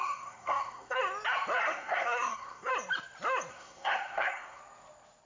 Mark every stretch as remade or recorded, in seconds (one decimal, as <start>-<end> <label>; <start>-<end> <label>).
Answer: 0.0-1.0 remade; 1.0-1.6 recorded; 1.6-2.7 remade; 2.7-3.5 recorded; 3.5-4.6 remade; 4.6-5.3 recorded

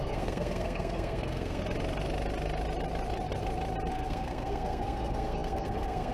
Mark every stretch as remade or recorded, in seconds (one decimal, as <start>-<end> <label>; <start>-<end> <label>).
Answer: 0.0-1.6 remade; 1.6-3.9 recorded; 3.9-6.1 remade

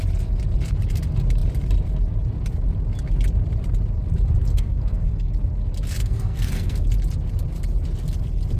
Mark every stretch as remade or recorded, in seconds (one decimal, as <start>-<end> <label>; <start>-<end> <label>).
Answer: 0.0-4.5 recorded; 4.5-5.3 remade; 5.3-6.0 recorded; 6.0-6.9 remade; 6.9-8.6 recorded

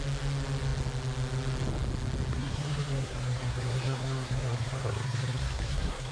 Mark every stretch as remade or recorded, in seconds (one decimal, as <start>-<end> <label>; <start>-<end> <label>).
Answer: 0.0-2.3 recorded; 2.3-6.1 remade

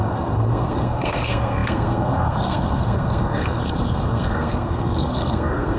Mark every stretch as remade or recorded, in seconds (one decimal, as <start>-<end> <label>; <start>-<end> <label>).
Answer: 0.0-5.8 remade

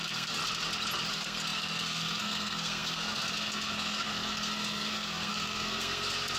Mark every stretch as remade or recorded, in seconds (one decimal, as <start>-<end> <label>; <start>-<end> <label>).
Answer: 0.0-0.4 remade; 0.4-1.1 recorded; 1.1-6.4 remade

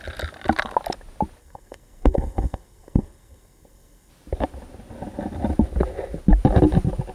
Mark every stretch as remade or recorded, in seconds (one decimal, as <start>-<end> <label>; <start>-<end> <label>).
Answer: 0.0-1.4 recorded; 1.4-4.1 remade; 4.1-7.1 recorded